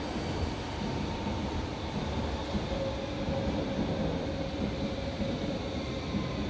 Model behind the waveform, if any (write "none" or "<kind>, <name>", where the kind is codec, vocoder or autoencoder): none